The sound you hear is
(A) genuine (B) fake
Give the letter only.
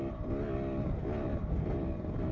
A